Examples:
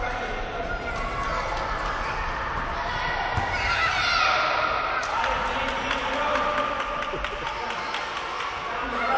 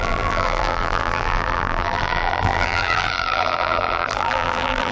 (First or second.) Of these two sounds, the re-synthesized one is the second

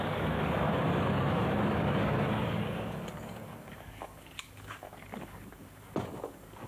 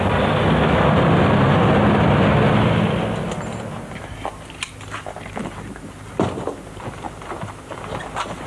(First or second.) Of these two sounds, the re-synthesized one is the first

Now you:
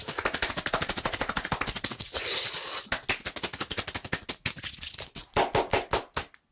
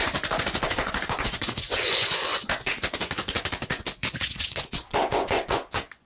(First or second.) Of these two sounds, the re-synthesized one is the second